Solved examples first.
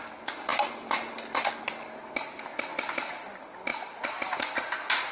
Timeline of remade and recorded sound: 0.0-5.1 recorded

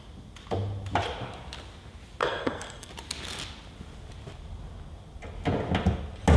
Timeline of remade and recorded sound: 0.0-2.2 recorded; 2.2-2.9 remade; 2.9-6.4 recorded

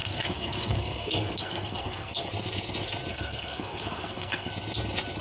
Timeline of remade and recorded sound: 0.0-2.3 remade; 2.3-3.1 recorded; 3.1-4.5 remade; 4.5-5.2 recorded

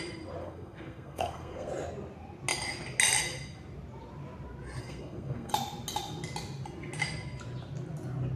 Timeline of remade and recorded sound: 0.0-0.4 recorded; 0.4-1.7 remade; 1.7-4.8 recorded; 4.8-5.5 remade; 5.5-8.4 recorded

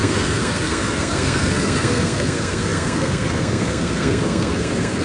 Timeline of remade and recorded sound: 0.0-5.0 remade

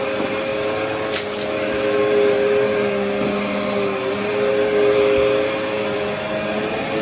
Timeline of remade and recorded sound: 0.0-7.0 recorded

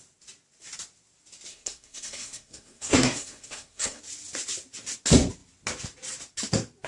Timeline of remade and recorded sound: 0.0-1.5 recorded; 1.5-4.0 remade; 4.0-6.9 recorded

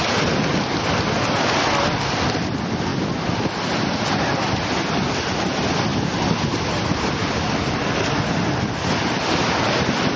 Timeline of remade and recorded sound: 0.0-10.2 recorded